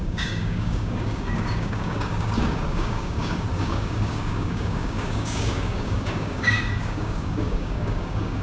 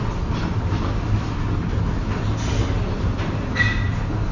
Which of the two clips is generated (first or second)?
first